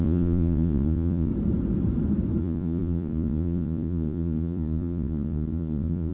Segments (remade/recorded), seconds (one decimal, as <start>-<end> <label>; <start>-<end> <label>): 0.0-1.3 remade; 1.3-2.4 recorded; 2.4-6.1 remade